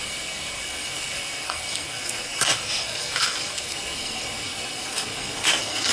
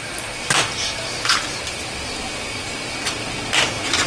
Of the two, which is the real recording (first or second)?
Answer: second